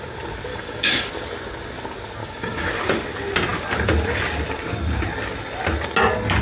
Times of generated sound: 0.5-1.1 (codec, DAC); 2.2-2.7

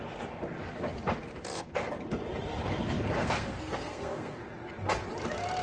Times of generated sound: 3.2-4.4 (codec, SNAC)